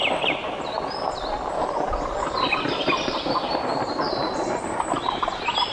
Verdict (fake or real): real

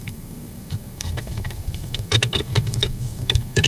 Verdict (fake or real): fake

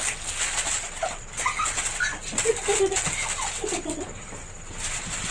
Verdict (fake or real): real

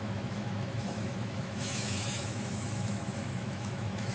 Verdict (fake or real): fake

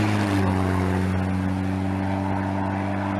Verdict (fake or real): real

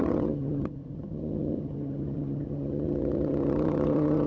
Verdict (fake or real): fake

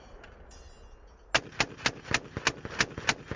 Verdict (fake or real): real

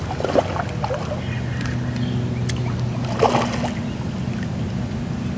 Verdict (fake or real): real